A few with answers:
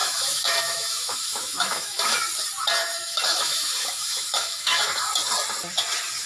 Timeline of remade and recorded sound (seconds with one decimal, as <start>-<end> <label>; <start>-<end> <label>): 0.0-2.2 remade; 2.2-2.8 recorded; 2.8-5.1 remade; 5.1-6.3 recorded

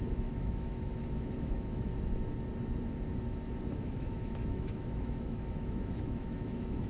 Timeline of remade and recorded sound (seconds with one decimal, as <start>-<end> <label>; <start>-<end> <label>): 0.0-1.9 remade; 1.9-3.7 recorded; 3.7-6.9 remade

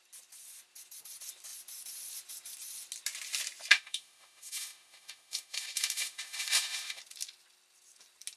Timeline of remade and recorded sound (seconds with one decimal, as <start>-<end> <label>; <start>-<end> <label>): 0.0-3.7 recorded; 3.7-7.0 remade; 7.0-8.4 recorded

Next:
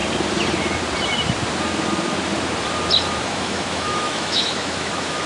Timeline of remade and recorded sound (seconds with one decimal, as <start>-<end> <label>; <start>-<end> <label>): 0.0-3.2 recorded; 3.2-5.3 remade